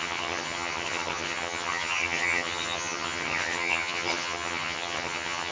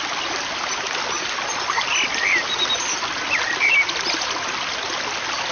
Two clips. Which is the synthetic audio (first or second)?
first